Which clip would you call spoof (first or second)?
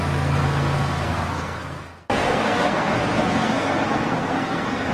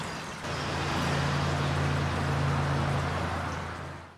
first